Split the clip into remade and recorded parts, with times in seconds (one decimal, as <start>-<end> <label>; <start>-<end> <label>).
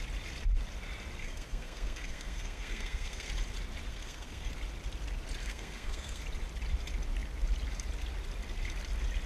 0.0-1.2 recorded; 1.2-3.3 remade; 3.3-3.9 recorded; 3.9-4.5 remade; 4.5-5.4 recorded; 5.4-6.2 remade; 6.2-9.3 recorded